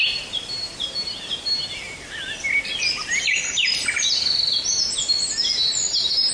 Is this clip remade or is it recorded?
recorded